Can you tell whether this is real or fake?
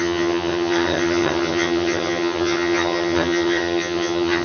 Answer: fake